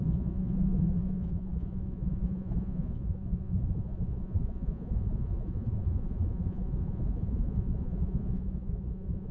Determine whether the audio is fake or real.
fake